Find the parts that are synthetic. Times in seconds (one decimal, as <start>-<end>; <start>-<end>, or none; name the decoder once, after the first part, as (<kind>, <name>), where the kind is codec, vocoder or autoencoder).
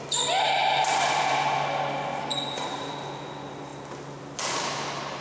0.6-1.4 (vocoder, BigVGAN v2); 2.3-2.9